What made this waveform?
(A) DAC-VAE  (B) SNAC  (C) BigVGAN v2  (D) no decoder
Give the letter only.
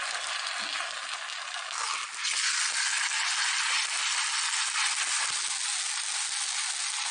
D